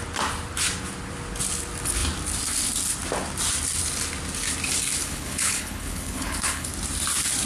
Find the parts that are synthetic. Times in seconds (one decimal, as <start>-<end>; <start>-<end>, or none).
5.0-6.7